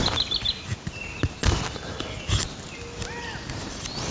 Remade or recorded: recorded